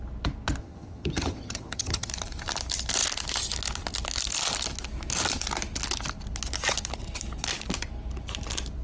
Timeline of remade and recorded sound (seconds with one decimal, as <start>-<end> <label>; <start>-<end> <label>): 0.0-0.6 recorded; 0.6-2.1 remade; 2.1-8.8 recorded